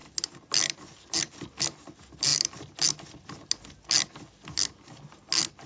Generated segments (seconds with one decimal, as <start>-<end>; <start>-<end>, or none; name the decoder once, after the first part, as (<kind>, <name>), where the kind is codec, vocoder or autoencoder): none